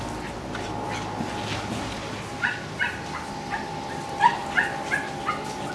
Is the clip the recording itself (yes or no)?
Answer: yes